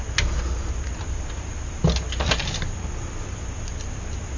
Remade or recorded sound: recorded